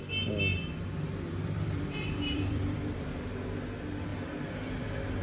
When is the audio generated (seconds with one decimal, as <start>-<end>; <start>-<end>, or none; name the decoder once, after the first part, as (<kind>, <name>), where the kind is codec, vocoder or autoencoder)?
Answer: 0.5-3.0 (vocoder, BigVGAN v2); 4.1-5.2